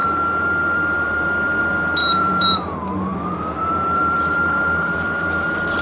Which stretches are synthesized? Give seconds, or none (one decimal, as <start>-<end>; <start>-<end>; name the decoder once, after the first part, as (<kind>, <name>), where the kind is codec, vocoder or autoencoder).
0.0-1.6 (vocoder, BigVGAN v2); 2.0-2.6; 3.1-5.8